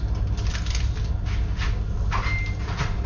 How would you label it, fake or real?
real